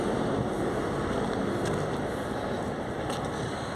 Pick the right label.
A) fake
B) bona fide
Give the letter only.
B